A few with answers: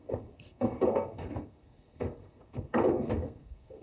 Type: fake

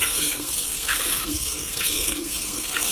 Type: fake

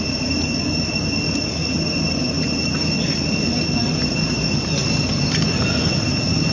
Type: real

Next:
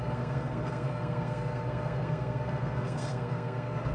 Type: fake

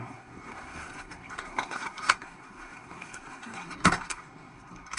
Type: fake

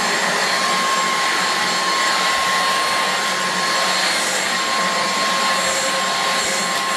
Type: real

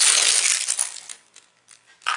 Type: real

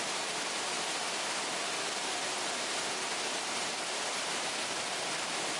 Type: real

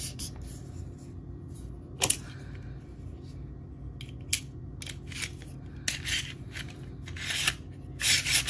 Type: real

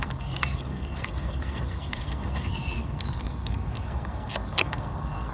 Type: fake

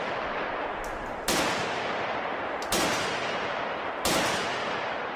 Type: real